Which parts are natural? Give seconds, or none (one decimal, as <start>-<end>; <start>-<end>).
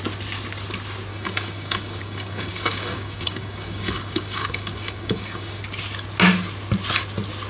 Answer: 0.0-1.1; 5.6-7.5